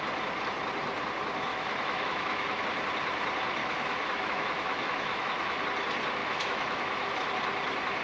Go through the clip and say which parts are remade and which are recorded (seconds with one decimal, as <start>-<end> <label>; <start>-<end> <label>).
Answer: 0.0-1.5 recorded; 1.5-2.6 remade; 2.6-3.6 recorded; 3.6-5.6 remade; 5.6-6.2 recorded; 6.2-7.1 remade; 7.1-8.0 recorded